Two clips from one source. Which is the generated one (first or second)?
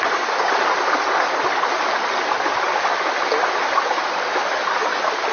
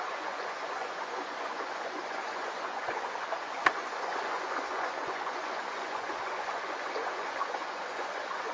second